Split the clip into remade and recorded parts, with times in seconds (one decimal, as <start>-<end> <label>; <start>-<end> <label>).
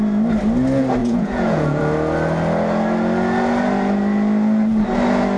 0.0-1.0 recorded; 1.0-1.8 remade; 1.8-5.4 recorded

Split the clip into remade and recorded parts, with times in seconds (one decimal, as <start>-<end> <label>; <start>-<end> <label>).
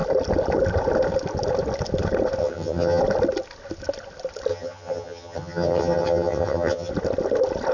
0.0-2.4 recorded; 2.4-3.0 remade; 3.0-4.5 recorded; 4.5-6.9 remade; 6.9-7.7 recorded